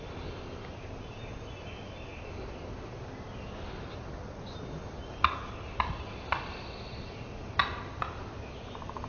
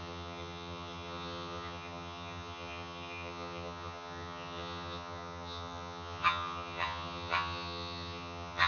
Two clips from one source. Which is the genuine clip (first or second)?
first